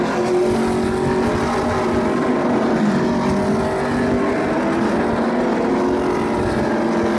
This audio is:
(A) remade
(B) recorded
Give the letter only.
B